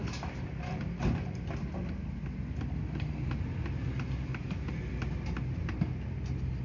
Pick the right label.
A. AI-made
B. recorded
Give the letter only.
B